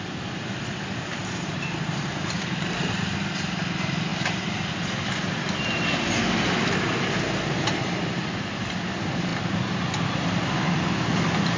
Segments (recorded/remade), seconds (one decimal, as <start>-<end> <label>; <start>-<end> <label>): 0.0-1.2 recorded; 1.2-3.0 remade; 3.0-4.1 recorded; 4.1-4.7 remade; 4.7-11.6 recorded